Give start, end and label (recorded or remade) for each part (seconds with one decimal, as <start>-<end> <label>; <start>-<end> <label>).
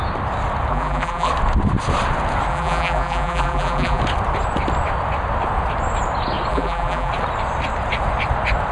0.0-0.7 recorded; 0.7-1.3 remade; 1.3-2.5 recorded; 2.5-4.0 remade; 4.0-6.5 recorded; 6.5-7.1 remade; 7.1-8.7 recorded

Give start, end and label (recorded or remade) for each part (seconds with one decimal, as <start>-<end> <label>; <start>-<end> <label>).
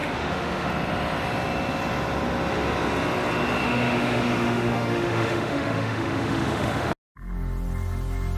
0.0-0.7 remade; 0.7-3.6 recorded; 3.6-6.9 remade; 6.9-8.4 recorded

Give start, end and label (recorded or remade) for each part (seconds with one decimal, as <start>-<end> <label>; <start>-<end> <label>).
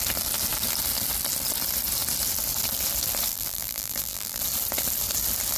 0.0-3.3 recorded; 3.3-4.4 remade; 4.4-5.6 recorded